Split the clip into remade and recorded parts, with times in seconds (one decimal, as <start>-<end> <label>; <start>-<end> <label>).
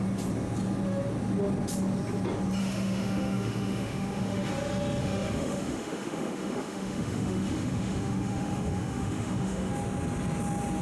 0.0-2.6 recorded; 2.6-4.5 remade; 4.5-5.0 recorded; 5.0-9.7 remade; 9.7-10.8 recorded